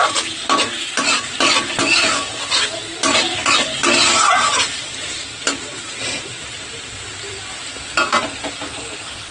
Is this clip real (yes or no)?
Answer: yes